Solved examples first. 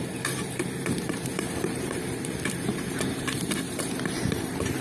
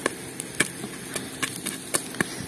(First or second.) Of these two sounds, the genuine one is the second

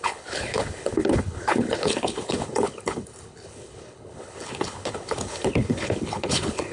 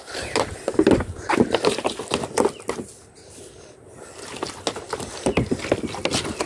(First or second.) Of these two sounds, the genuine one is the second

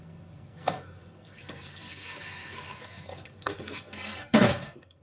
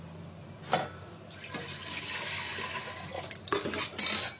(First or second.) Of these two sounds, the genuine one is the second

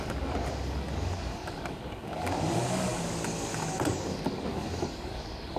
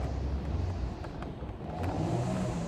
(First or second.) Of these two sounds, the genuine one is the second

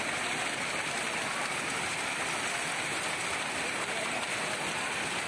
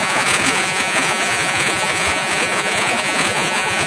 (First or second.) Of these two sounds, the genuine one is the first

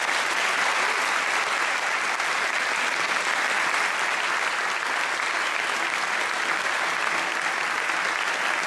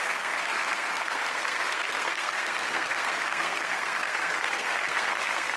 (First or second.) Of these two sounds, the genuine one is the first